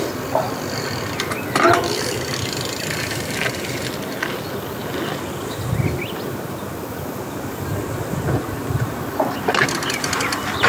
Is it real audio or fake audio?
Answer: real